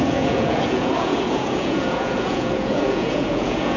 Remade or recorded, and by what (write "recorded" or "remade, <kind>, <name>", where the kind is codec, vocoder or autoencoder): remade, vocoder, Vocos